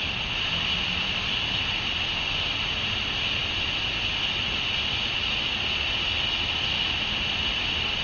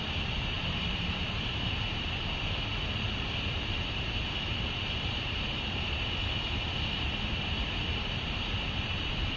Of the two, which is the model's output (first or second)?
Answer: second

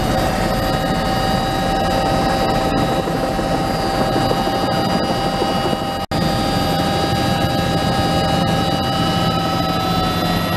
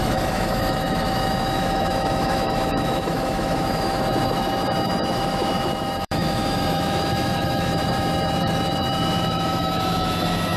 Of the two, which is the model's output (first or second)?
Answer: second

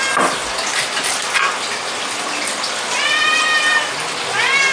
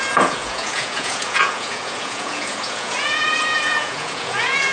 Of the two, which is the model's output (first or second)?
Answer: second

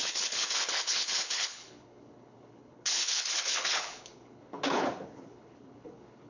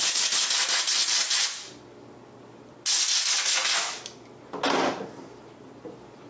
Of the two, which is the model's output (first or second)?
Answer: first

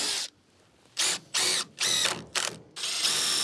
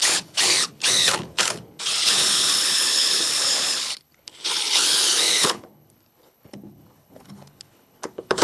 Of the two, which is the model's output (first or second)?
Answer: second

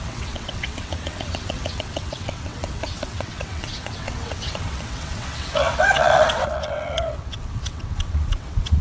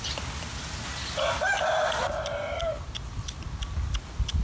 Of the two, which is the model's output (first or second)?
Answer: first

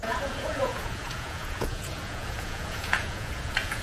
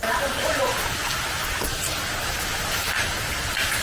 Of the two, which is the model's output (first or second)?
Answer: first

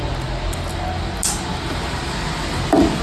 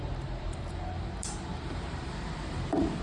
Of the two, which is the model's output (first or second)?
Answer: second